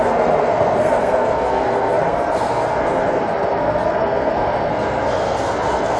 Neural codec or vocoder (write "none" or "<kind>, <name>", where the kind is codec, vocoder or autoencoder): codec, SNAC